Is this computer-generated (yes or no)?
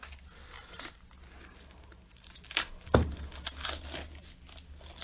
no